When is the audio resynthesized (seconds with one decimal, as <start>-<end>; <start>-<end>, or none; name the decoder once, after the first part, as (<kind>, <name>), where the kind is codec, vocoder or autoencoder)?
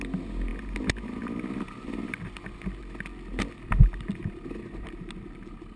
none